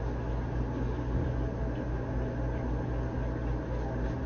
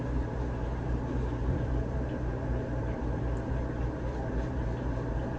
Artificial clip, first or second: second